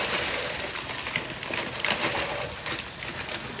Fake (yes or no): yes